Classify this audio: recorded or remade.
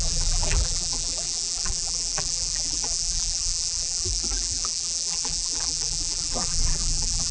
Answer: remade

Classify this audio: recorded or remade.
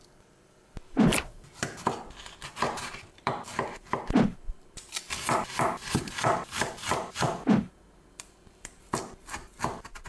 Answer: remade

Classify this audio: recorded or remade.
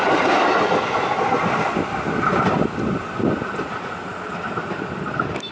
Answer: recorded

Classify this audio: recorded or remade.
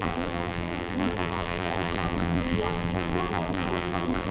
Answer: remade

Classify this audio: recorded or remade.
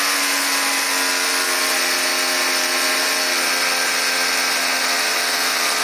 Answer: recorded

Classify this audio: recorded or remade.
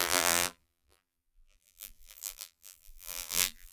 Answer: remade